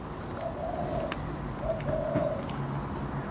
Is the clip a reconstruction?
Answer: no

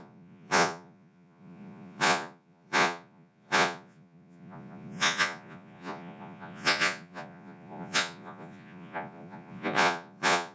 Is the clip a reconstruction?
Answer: yes